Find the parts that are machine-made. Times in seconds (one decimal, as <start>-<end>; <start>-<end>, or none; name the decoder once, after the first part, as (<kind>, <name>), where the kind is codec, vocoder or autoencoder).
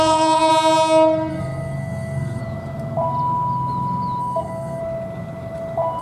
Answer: 0.0-0.5 (codec, SNAC); 1.3-2.4; 4.2-4.8